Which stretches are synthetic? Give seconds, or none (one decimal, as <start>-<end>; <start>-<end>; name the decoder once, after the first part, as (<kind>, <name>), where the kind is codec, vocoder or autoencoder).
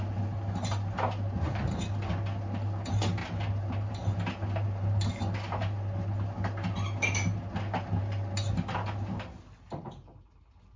none